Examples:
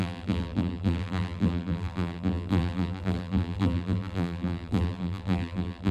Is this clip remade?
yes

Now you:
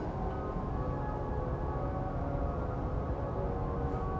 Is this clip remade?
no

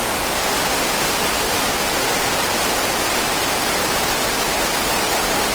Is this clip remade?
no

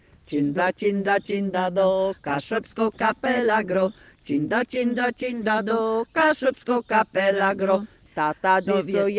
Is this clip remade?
no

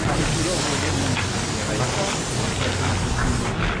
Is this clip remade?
no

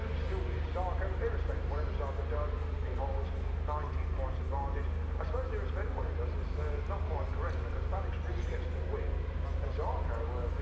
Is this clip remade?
no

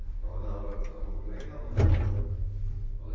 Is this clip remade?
no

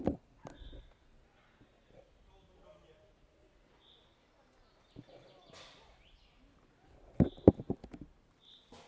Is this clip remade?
no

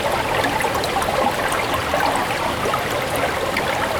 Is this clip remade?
no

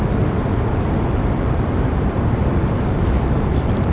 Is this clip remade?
yes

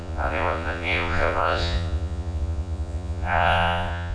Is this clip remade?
yes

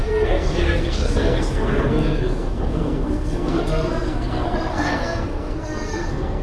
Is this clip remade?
yes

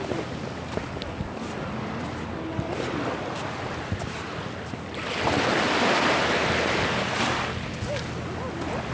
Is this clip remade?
no